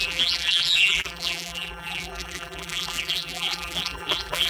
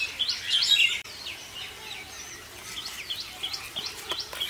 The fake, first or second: first